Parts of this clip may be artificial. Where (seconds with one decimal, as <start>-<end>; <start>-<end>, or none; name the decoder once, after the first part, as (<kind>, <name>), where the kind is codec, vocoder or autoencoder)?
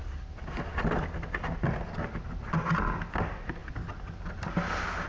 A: none